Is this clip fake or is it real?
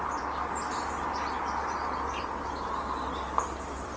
real